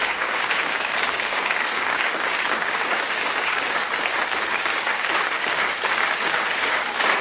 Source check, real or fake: fake